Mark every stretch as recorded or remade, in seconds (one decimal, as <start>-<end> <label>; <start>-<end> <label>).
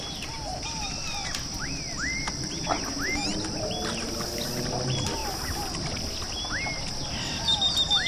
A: 0.0-8.1 recorded